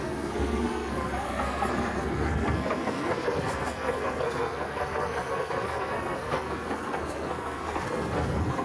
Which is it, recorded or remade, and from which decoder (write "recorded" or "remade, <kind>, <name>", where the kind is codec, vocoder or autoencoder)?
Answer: remade, codec, SNAC